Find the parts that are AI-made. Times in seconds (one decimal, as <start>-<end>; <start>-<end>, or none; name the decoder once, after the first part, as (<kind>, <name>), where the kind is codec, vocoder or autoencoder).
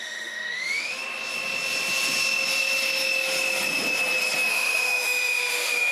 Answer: 0.0-1.0 (autoencoder, DAC-VAE); 4.5-5.9